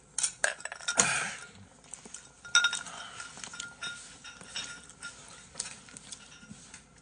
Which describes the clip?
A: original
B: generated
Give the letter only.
A